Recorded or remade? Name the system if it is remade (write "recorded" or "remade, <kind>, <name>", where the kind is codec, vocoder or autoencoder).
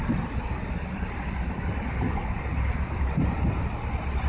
recorded